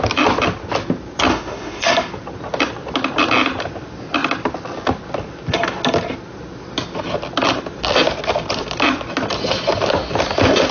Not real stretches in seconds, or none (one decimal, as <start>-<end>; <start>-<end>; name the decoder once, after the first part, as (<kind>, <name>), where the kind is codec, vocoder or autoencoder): 1.3-1.9 (autoencoder, DAC-VAE)